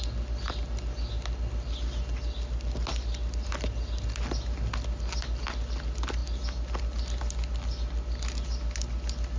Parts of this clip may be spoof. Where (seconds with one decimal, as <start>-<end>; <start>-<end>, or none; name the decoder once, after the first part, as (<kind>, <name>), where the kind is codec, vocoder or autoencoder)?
none